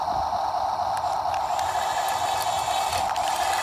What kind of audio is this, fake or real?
real